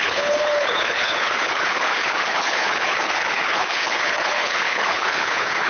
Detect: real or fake fake